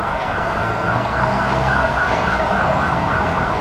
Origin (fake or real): fake